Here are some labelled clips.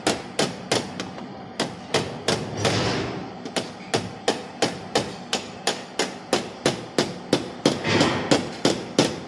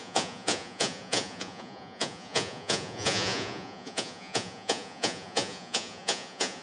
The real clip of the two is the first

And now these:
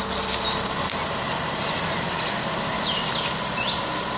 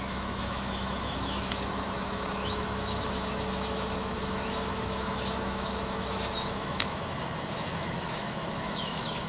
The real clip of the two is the first